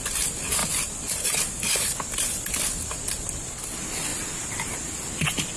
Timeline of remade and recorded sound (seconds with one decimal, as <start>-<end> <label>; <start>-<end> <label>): 0.0-5.6 recorded